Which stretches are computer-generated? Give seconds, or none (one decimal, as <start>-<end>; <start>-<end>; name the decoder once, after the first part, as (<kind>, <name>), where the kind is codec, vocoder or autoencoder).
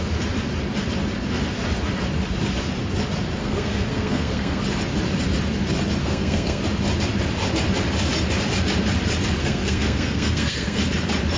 3.4-4.6 (codec, SNAC); 6.0-6.6; 9.4-10.8